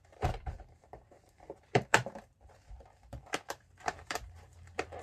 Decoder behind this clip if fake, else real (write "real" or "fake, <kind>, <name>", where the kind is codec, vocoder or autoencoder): fake, vocoder, BigVGAN v2